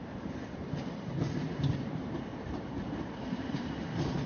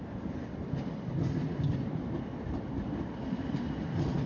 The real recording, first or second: second